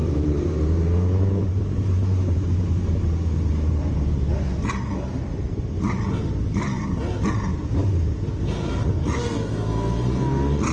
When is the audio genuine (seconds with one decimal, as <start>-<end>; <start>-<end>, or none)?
4.3-7.5; 8.2-10.7